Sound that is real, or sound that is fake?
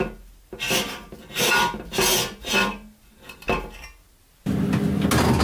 real